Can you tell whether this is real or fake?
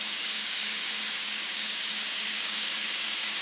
fake